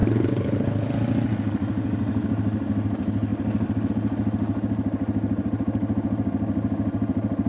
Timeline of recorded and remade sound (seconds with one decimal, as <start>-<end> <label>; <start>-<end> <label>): 0.0-0.9 remade; 0.9-7.5 recorded